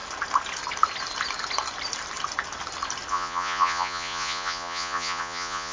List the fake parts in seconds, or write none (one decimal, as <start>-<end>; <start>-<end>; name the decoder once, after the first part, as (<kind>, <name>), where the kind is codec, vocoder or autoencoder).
3.1-5.7 (vocoder, Vocos)